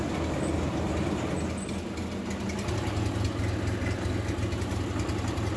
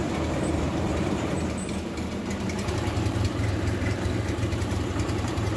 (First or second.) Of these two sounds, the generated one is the second